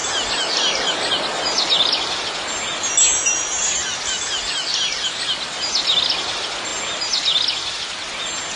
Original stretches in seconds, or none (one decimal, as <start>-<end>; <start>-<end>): 0.0-8.6